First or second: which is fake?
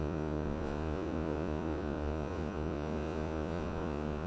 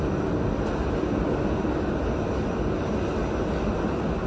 first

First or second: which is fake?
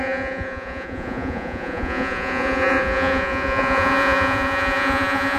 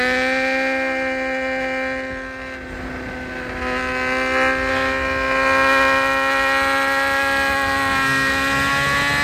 first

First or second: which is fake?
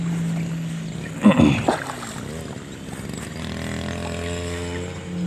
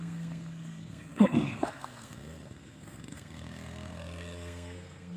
second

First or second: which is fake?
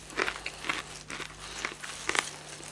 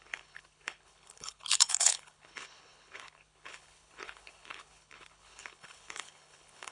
second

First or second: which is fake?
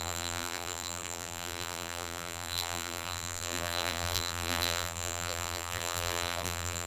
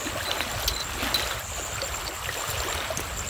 first